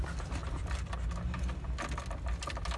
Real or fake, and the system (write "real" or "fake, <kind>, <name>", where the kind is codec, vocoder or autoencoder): real